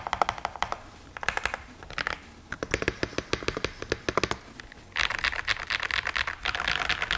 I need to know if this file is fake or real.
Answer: real